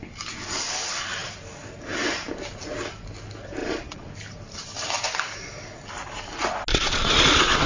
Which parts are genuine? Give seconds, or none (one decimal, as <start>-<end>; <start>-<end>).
0.0-3.6; 4.1-6.7